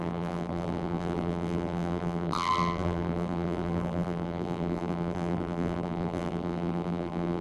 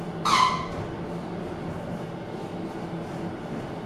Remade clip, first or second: first